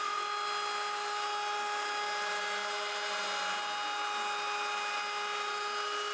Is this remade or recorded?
recorded